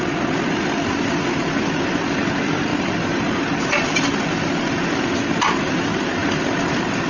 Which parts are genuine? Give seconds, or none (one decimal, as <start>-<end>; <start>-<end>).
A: 0.0-7.1

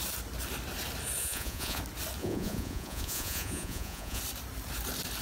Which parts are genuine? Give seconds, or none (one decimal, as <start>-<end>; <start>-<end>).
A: 0.0-1.2; 1.8-2.2; 4.2-5.2

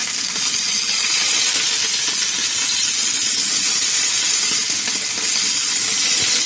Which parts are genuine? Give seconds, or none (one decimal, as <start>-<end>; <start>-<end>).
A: 0.0-6.5

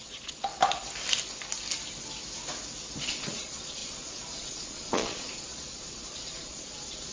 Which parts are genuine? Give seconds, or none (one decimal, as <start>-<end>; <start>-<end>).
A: 0.5-3.0